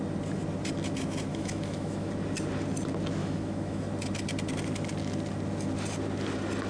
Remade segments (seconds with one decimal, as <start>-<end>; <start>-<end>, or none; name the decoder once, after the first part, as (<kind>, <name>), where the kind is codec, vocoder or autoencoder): 1.3-2.1 (autoencoder, DAC-VAE); 3.2-3.8